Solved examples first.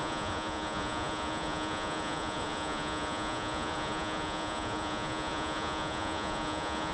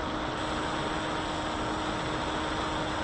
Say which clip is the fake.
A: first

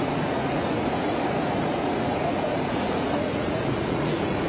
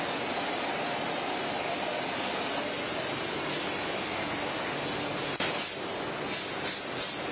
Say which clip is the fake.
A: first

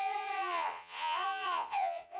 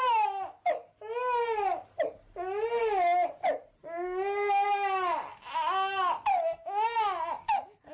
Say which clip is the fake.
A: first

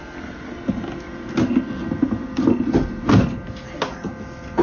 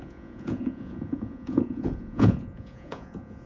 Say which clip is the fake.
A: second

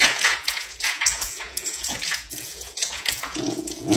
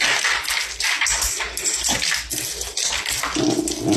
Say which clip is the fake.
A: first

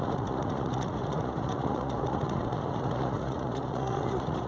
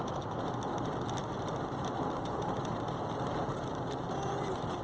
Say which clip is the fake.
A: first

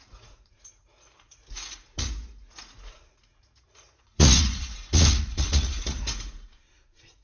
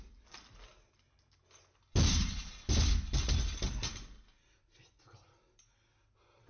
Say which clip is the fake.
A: first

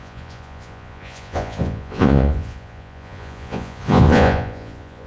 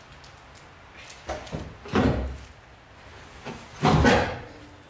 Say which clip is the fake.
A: first